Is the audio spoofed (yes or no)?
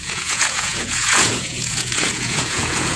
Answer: yes